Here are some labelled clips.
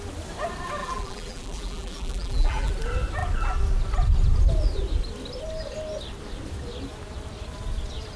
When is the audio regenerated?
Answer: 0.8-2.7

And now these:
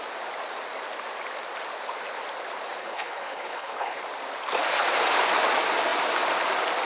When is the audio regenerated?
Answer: 2.8-4.0

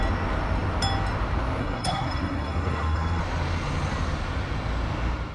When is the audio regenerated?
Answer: 1.6-3.2